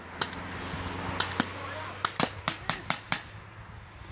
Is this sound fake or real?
real